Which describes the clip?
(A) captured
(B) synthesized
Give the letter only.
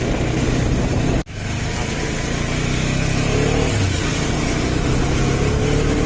A